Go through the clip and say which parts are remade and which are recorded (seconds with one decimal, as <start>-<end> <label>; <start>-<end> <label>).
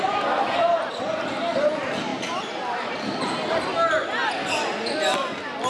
0.0-5.7 recorded